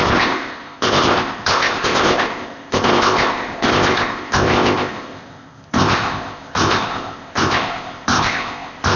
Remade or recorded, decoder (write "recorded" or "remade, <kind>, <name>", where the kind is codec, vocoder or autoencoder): remade, codec, ZipCodec